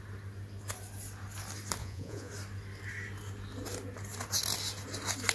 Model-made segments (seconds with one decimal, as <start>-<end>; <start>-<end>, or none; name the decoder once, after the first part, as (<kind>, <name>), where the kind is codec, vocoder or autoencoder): 1.8-2.3 (vocoder, Vocos)